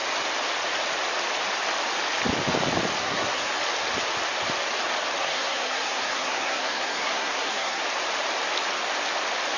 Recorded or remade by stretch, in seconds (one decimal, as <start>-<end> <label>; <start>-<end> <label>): 0.0-3.0 recorded; 3.0-3.5 remade; 3.5-5.2 recorded; 5.2-7.8 remade; 7.8-9.6 recorded

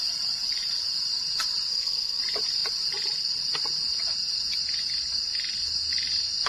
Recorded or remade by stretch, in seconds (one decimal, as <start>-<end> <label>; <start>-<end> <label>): 0.0-1.7 recorded; 1.7-2.2 remade; 2.2-6.5 recorded

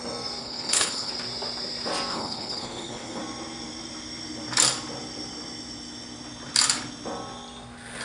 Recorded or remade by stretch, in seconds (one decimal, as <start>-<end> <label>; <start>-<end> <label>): 0.0-0.4 recorded; 0.4-1.1 remade; 1.1-2.1 recorded; 2.1-3.2 remade; 3.2-8.0 recorded

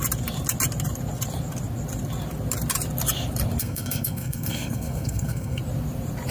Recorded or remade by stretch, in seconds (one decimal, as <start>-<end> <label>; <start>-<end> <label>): 0.0-3.6 recorded; 3.6-5.6 remade; 5.6-6.3 recorded

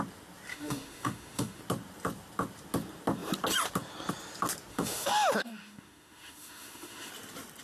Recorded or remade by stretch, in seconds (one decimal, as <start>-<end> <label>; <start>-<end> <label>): 0.0-0.5 recorded; 0.5-1.6 remade; 1.6-4.7 recorded; 4.7-7.1 remade; 7.1-7.6 recorded